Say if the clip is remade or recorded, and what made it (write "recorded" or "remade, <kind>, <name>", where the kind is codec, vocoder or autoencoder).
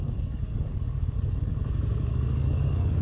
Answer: remade, codec, DAC